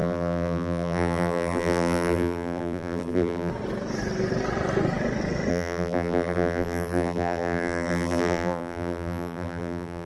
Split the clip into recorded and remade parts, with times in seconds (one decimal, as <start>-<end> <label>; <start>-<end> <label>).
0.0-3.5 remade; 3.5-5.5 recorded; 5.5-10.1 remade